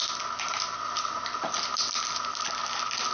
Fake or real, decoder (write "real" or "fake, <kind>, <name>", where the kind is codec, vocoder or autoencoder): real